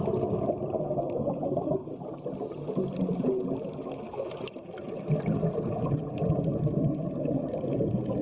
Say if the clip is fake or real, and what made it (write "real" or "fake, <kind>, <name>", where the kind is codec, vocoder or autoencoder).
real